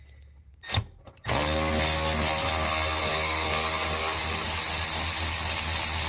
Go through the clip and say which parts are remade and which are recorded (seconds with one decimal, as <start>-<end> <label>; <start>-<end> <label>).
0.0-3.1 recorded; 3.1-4.2 remade; 4.2-6.1 recorded